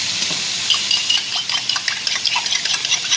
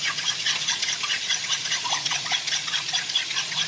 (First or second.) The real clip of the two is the first